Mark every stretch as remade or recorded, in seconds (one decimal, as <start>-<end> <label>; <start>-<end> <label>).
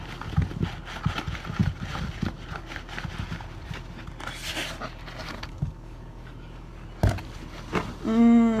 0.0-5.3 recorded; 5.3-6.7 remade; 6.7-8.6 recorded